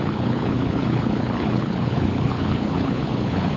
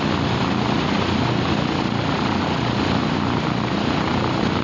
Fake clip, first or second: first